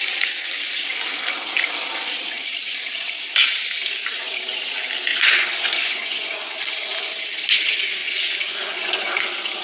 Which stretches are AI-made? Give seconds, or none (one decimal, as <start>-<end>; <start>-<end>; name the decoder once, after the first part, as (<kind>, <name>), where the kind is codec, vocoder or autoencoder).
5.1-6.6 (vocoder, Vocos); 8.0-9.1